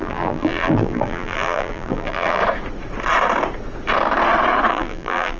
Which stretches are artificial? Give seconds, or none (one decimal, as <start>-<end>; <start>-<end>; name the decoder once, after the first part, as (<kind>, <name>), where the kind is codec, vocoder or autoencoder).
0.0-2.4 (vocoder, BigVGAN v2); 4.7-5.4